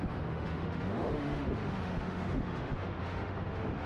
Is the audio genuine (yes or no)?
no